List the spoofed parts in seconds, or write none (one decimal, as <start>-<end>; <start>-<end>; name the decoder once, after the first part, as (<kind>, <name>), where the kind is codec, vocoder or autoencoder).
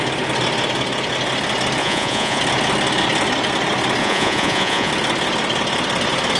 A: 1.8-2.4 (vocoder, Vocos); 4.0-4.9